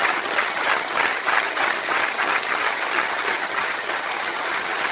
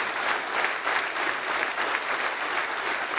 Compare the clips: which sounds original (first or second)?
second